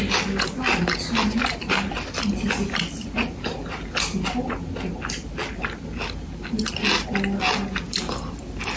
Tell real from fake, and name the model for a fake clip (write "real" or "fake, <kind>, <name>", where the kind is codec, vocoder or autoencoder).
real